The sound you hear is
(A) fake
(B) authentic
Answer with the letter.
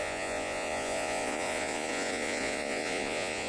A